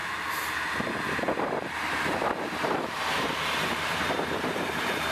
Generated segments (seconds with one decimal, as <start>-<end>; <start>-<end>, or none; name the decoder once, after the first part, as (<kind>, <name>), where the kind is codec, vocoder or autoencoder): 0.0-5.1 (vocoder, BigVGAN v2)